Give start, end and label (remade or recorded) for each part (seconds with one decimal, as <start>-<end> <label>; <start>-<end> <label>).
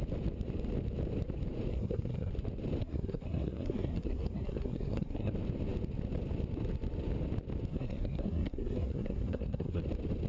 0.0-1.7 recorded; 1.7-2.3 remade; 2.3-2.8 recorded; 2.8-5.3 remade; 5.3-7.7 recorded; 7.7-9.8 remade; 9.8-10.3 recorded